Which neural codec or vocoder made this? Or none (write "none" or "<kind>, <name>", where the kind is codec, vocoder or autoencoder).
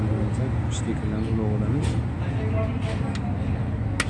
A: none